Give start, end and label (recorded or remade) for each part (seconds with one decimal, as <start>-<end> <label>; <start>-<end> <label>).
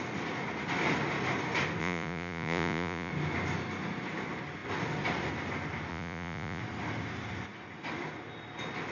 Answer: 0.0-1.8 recorded; 1.8-3.1 remade; 3.1-5.9 recorded; 5.9-6.6 remade; 6.6-8.9 recorded